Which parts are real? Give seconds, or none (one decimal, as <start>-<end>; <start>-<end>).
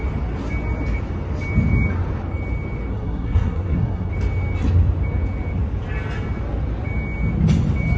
0.0-2.9; 4.1-8.0